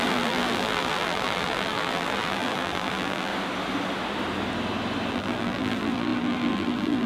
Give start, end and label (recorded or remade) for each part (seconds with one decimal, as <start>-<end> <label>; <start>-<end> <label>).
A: 0.0-3.3 remade; 3.3-5.1 recorded; 5.1-7.1 remade